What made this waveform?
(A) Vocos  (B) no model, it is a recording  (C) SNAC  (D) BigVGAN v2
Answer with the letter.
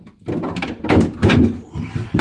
B